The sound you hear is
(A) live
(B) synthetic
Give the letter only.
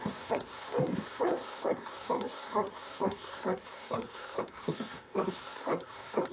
B